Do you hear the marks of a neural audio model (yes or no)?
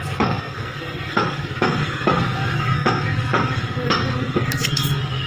yes